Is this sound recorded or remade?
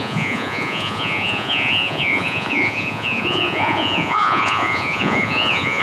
remade